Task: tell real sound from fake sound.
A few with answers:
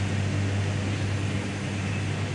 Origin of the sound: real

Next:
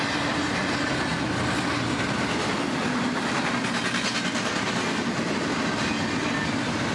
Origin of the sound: real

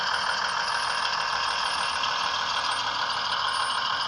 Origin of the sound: real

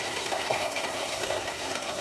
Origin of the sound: fake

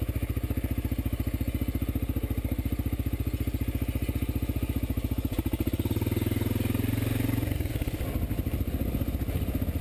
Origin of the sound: real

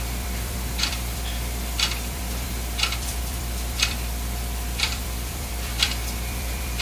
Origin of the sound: fake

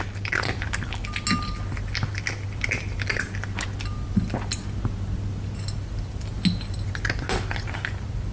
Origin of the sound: real